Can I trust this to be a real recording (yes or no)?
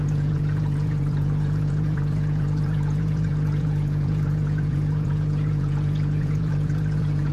no